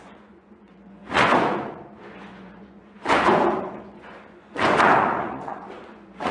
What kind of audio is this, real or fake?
fake